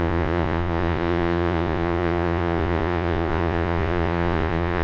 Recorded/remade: remade